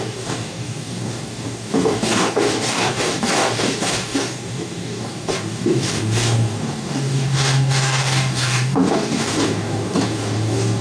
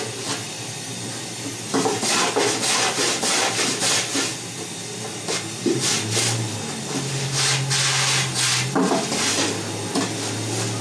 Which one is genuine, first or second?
second